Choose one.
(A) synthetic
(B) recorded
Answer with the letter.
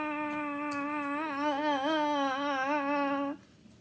B